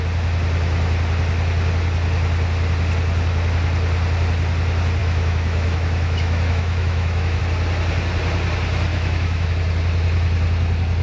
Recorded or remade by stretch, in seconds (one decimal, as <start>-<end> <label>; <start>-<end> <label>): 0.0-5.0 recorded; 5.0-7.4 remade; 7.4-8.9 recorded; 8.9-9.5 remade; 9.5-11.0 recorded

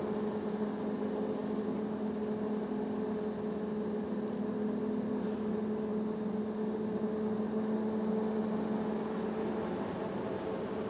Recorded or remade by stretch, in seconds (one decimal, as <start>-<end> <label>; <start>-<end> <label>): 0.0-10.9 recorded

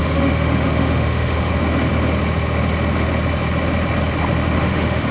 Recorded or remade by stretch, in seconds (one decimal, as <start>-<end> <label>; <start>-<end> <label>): 0.0-1.5 remade; 1.5-4.6 recorded; 4.6-5.1 remade